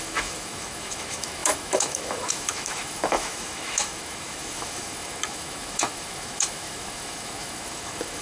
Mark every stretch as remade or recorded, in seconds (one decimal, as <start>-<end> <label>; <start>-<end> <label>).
0.0-8.2 remade